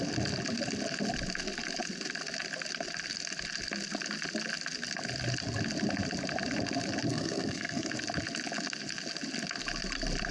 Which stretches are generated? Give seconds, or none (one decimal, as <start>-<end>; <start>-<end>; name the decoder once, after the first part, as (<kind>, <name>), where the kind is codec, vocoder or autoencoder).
7.1-7.9 (codec, SNAC)